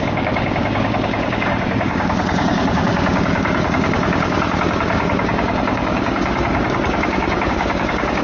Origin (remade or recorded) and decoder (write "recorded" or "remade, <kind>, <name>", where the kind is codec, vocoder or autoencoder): remade, codec, DAC